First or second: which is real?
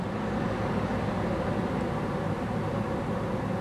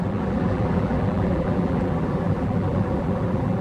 first